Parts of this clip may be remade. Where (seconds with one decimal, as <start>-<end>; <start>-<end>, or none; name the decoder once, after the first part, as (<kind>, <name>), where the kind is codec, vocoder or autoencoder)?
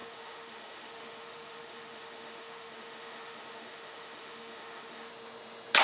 0.0-5.1 (autoencoder, DAC-VAE)